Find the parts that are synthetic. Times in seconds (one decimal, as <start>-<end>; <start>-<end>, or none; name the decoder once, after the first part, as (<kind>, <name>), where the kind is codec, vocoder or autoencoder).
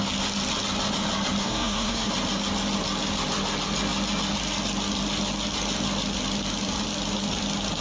1.4-2.1 (codec, SNAC)